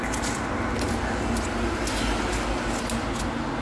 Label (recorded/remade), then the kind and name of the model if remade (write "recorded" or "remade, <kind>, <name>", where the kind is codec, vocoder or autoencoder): recorded